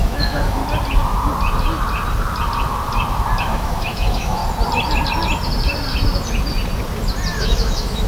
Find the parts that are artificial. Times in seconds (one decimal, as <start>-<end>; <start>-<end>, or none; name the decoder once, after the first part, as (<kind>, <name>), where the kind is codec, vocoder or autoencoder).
0.0-0.6 (autoencoder, DAC-VAE); 3.4-4.4; 7.4-8.1